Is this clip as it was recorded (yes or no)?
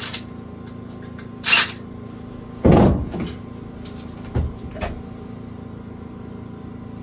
yes